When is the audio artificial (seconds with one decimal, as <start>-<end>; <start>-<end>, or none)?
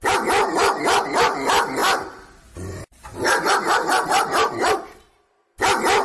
none